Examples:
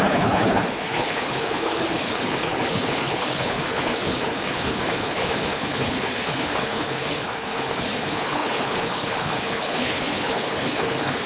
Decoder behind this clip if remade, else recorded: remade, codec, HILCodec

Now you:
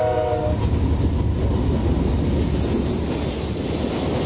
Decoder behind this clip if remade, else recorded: recorded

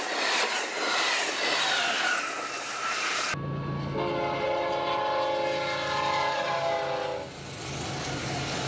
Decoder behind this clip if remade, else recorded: recorded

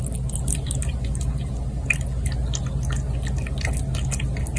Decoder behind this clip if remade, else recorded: recorded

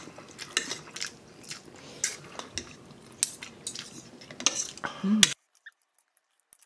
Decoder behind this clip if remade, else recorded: recorded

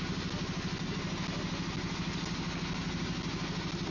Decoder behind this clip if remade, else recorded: recorded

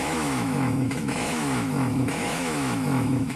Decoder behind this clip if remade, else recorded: remade, autoencoder, DAC-VAE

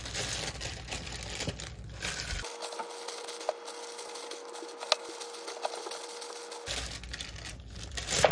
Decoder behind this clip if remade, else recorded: recorded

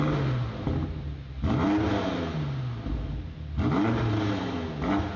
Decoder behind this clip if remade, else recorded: recorded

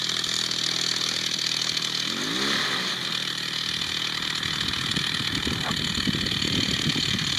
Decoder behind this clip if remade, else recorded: recorded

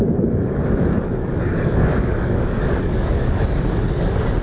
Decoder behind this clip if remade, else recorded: remade, codec, DAC